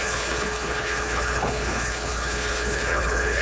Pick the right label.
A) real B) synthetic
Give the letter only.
B